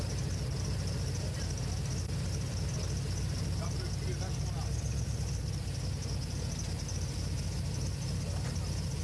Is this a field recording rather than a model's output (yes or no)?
yes